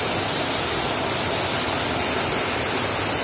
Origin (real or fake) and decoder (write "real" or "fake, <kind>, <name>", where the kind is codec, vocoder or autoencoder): real